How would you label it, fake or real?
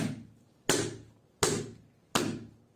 real